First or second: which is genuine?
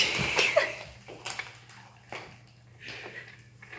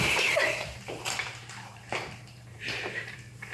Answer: first